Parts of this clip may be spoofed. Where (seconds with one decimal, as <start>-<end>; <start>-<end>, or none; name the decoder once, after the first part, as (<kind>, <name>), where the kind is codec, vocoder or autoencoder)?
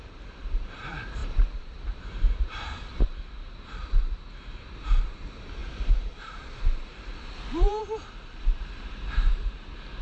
0.0-10.0 (vocoder, BigVGAN v2)